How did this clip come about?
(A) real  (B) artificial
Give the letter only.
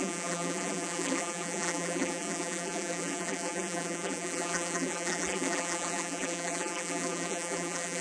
B